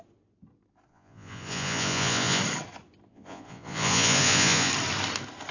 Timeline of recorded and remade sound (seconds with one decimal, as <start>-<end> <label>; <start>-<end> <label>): 0.0-0.9 recorded; 0.9-2.4 remade; 2.4-3.1 recorded; 3.1-4.7 remade; 4.7-5.5 recorded